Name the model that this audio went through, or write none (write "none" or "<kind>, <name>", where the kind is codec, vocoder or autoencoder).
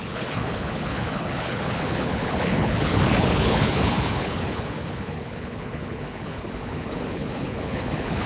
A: codec, HILCodec